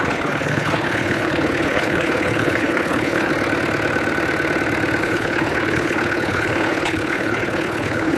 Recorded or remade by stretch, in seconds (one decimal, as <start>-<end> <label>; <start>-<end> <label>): 0.0-3.3 remade; 3.3-5.0 recorded; 5.0-8.2 remade

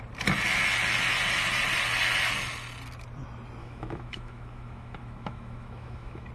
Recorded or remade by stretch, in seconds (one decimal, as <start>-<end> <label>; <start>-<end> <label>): 0.0-3.6 recorded; 3.6-6.3 remade

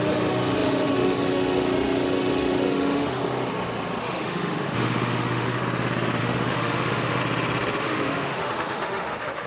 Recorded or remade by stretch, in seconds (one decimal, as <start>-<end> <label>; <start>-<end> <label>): 0.0-3.2 remade; 3.2-4.0 recorded; 4.0-5.6 remade; 5.6-6.2 recorded; 6.2-7.2 remade; 7.2-7.8 recorded; 7.8-9.5 remade

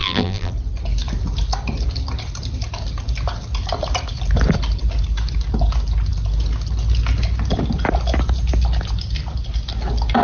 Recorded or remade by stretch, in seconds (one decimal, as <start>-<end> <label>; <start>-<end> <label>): 0.0-0.5 remade; 0.5-10.2 recorded

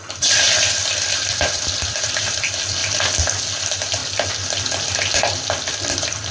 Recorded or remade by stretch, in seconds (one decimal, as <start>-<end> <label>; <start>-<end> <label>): 0.0-2.8 remade; 2.8-3.6 recorded; 3.6-4.0 remade; 4.0-5.2 recorded; 5.2-6.3 remade

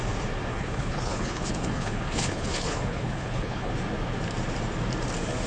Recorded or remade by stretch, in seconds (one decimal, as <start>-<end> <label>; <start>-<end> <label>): 0.0-0.5 recorded; 0.5-3.7 remade; 3.7-5.5 recorded

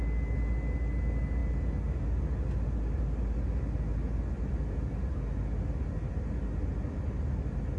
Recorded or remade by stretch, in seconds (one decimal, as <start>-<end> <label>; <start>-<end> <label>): 0.0-7.8 recorded

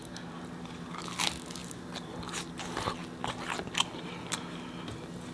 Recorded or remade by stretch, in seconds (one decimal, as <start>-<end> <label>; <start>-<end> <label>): 0.0-5.3 recorded